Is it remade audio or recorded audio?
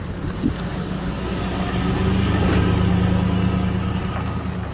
recorded